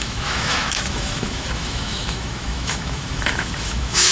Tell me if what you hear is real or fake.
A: fake